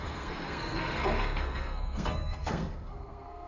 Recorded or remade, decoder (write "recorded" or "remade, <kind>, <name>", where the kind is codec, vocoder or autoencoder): remade, codec, SNAC